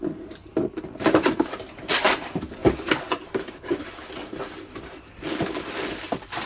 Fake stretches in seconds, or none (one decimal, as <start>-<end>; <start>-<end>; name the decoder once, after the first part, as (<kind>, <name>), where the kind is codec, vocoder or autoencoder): 0.0-0.4 (vocoder, BigVGAN v2); 1.0-2.6; 3.1-6.5